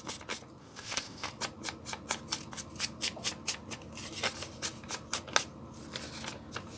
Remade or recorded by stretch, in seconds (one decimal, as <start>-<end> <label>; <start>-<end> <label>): 0.0-0.6 recorded; 0.6-1.3 remade; 1.3-6.8 recorded